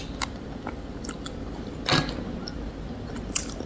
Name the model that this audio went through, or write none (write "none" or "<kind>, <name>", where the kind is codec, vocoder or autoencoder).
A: none